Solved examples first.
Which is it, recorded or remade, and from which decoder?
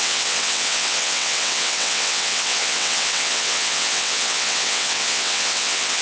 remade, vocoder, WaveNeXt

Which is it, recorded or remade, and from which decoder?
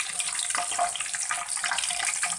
recorded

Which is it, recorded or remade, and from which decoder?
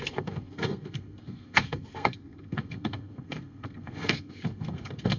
remade, codec, SNAC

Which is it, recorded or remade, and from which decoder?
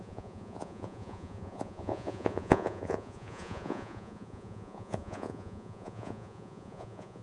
remade, vocoder, Vocos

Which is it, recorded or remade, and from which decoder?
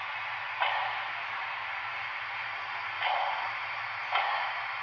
recorded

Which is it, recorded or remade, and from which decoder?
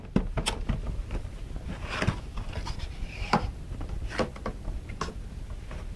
recorded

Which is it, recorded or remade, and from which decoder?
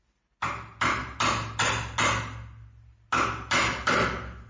recorded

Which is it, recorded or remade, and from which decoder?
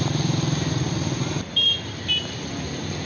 recorded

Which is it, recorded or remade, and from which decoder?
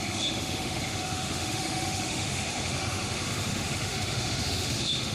remade, autoencoder, DAC-VAE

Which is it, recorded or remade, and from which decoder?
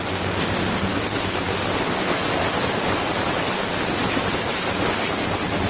recorded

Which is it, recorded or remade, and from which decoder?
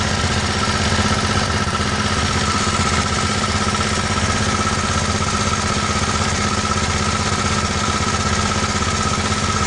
recorded